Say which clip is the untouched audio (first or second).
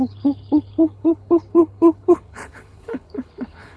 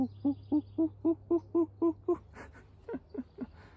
second